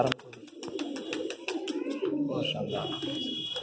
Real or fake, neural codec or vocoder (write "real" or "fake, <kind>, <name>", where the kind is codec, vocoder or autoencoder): real